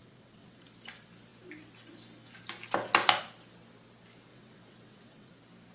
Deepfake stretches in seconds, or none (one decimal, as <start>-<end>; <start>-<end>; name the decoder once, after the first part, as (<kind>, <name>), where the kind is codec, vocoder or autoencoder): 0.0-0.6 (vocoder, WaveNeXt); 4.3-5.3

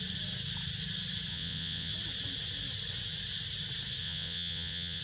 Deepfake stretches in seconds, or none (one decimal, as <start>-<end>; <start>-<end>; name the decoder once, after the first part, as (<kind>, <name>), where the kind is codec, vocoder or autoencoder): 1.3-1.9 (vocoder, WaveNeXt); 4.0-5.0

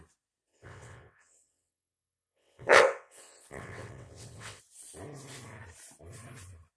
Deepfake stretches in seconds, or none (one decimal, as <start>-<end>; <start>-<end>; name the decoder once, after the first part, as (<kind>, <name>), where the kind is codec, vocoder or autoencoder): 0.5-4.6 (vocoder, WaveNeXt)